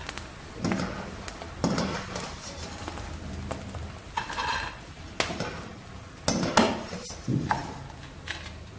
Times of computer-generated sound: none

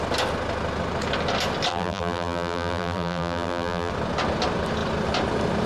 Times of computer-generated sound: 1.7-3.9 (vocoder, BigVGAN v2)

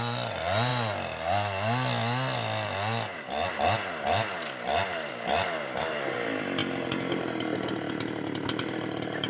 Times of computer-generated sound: none

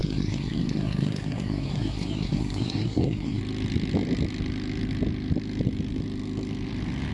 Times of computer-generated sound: 0.0-3.4 (codec, SNAC)

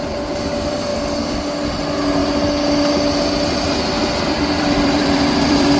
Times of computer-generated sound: 0.0-0.9 (vocoder, BigVGAN v2); 1.7-2.2; 4.0-5.8